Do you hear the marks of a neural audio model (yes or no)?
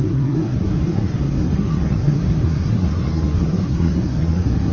yes